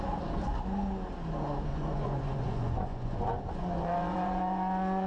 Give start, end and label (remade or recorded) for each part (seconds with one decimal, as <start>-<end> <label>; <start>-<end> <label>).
0.0-1.7 recorded; 1.7-5.1 remade